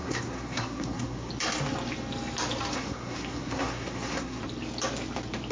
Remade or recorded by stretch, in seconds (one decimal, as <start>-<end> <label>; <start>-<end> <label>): 0.0-1.3 remade; 1.3-2.7 recorded; 2.7-4.4 remade; 4.4-5.5 recorded